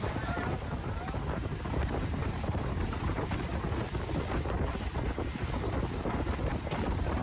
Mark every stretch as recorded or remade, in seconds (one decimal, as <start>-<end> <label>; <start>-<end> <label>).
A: 0.0-3.5 remade; 3.5-4.7 recorded; 4.7-7.2 remade